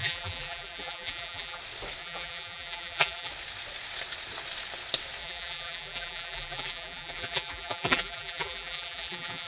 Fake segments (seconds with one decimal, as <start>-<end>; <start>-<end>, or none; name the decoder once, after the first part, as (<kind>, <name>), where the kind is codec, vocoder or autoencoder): 0.0-1.6 (vocoder, BigVGAN v2); 2.0-3.3; 5.2-9.5